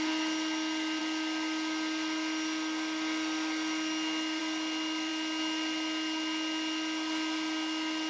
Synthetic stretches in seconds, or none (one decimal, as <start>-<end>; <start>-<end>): none